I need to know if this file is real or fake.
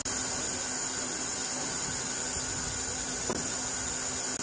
real